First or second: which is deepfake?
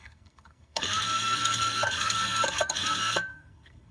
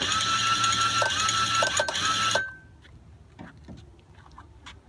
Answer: first